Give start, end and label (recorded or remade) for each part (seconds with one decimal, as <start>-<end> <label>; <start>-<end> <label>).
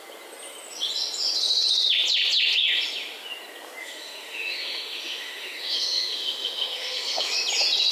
0.0-3.8 recorded; 3.8-7.3 remade; 7.3-7.9 recorded